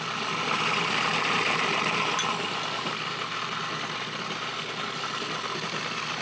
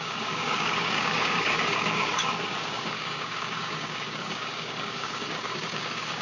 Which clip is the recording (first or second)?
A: first